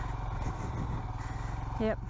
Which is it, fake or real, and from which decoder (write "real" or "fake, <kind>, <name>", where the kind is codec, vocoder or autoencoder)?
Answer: real